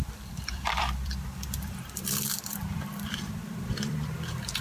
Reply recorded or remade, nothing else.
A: remade